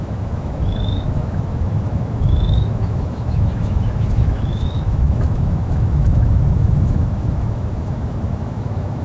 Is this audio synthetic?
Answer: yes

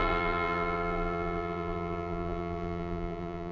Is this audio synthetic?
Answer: yes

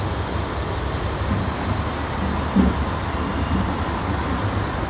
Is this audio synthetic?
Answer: no